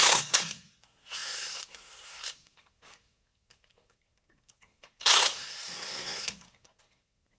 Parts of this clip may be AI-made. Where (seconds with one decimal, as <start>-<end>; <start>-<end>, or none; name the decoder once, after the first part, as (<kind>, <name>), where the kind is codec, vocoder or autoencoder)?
0.0-7.4 (codec, SNAC)